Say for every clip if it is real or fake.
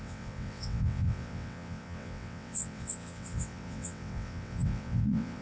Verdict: fake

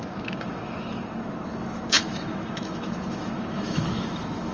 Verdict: fake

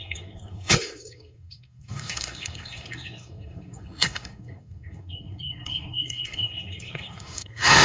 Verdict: fake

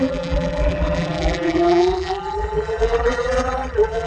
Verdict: fake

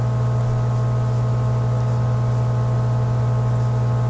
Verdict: real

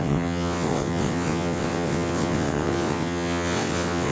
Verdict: fake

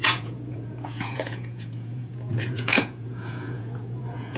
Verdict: fake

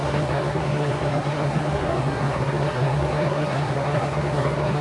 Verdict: fake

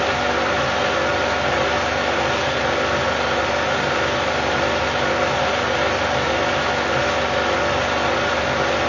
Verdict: real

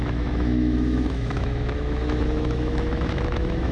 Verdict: fake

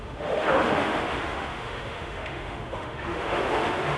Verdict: fake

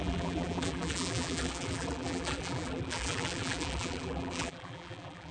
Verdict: fake